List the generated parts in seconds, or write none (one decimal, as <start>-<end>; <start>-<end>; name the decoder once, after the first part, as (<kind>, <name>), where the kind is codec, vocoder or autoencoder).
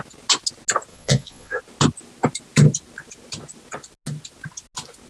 0.9-1.6 (vocoder, Vocos)